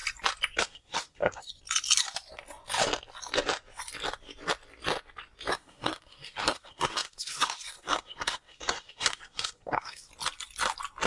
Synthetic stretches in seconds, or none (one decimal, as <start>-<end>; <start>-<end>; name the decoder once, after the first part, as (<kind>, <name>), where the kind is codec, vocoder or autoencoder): 0.6-1.5 (codec, SNAC); 5.5-10.1